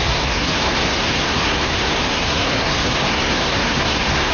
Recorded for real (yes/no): no